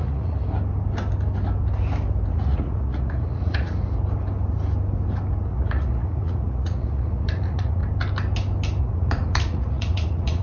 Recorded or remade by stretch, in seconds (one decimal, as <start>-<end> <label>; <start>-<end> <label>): 0.0-0.4 remade; 0.4-2.3 recorded; 2.3-3.7 remade; 3.7-5.5 recorded; 5.5-7.8 remade; 7.8-8.8 recorded; 8.8-10.4 remade